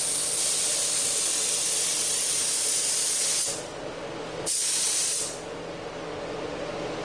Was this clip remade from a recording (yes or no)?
no